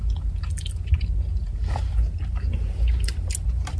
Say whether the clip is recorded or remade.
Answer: recorded